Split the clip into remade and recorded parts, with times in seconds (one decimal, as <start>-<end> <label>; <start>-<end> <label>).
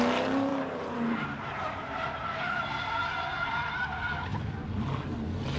0.0-0.5 recorded; 0.5-2.6 remade; 2.6-5.6 recorded